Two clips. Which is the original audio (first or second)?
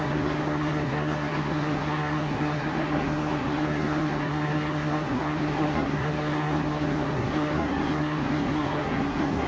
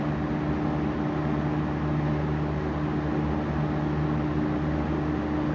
second